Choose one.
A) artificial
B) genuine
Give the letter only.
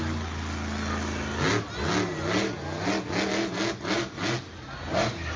B